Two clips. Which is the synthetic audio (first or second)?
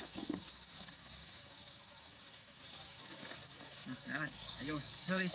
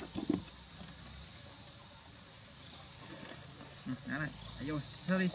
first